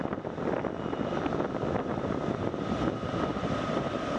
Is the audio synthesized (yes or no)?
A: yes